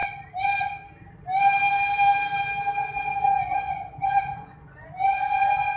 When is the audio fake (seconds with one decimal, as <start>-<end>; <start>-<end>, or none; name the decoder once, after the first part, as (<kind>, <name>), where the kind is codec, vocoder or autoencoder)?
2.8-5.8 (vocoder, Vocos)